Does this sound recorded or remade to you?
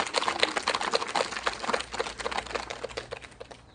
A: recorded